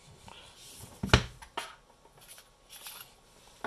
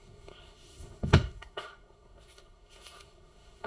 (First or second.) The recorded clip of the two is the first